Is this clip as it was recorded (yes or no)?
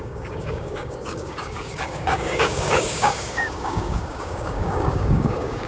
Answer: no